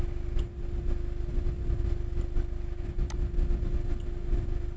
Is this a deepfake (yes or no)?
no